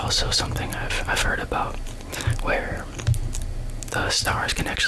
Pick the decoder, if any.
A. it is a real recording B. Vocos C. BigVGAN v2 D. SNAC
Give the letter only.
A